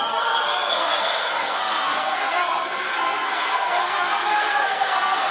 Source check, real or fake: fake